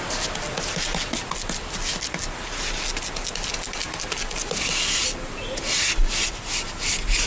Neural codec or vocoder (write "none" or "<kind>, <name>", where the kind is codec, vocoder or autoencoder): none